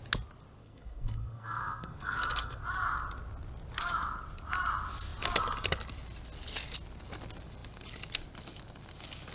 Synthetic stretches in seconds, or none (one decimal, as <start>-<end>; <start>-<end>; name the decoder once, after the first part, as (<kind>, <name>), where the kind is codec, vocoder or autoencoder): 0.6-2.6 (codec, SNAC)